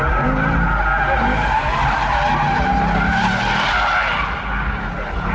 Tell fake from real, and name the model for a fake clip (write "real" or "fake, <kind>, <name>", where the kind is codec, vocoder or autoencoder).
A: real